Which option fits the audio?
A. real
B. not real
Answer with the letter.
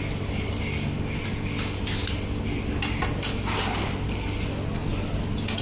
A